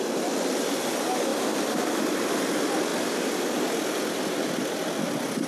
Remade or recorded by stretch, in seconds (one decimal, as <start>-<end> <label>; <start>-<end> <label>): 0.0-5.5 recorded